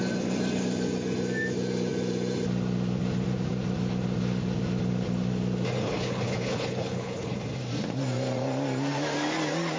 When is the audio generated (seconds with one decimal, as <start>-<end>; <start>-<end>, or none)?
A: 5.8-7.4